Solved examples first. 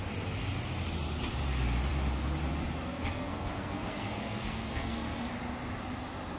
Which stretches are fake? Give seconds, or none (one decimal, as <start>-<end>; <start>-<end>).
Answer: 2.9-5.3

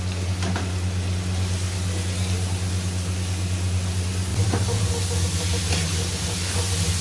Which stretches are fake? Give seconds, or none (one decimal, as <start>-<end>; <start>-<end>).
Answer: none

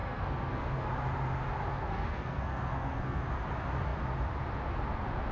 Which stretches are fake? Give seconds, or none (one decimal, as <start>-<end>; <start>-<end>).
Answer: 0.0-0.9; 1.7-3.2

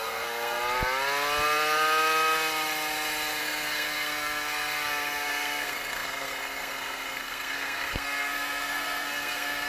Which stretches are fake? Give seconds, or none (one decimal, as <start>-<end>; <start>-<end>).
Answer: 0.0-0.6; 3.4-9.7

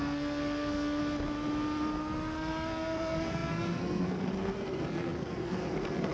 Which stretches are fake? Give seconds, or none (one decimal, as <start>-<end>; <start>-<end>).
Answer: 0.0-1.0; 2.0-6.1

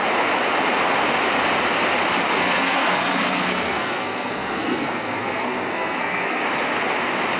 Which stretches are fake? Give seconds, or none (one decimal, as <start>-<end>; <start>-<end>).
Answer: 2.3-6.4

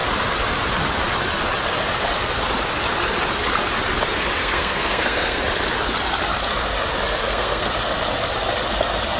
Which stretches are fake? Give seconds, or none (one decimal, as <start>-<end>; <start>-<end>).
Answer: 4.4-5.4; 7.2-7.7

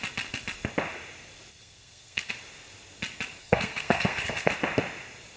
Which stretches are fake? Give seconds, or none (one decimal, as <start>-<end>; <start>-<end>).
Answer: 1.5-2.3; 3.4-4.5